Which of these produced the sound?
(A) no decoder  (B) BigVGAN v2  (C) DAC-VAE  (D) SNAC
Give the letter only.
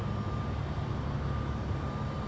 A